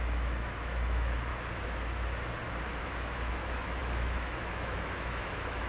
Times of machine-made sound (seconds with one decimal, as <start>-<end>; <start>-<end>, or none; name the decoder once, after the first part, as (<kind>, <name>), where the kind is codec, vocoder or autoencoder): 0.0-1.3 (autoencoder, DAC-VAE); 2.8-5.7